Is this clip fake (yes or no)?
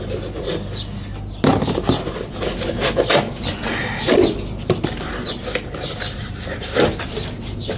no